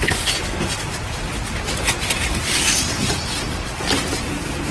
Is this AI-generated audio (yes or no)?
no